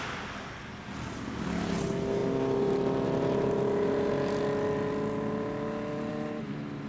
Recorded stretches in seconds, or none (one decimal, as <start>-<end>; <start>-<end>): 0.0-6.9